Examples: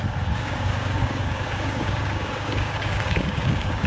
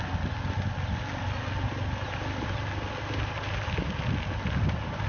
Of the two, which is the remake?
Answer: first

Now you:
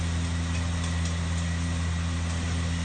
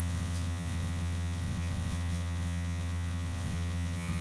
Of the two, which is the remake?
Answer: second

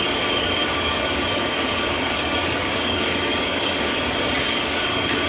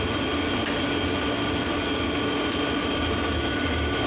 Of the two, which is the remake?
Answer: first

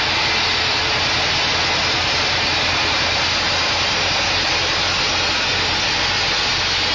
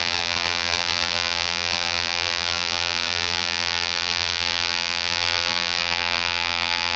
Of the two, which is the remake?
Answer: second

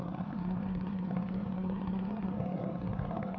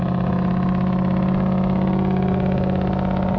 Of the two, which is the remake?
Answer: first